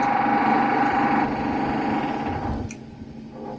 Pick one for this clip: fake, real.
real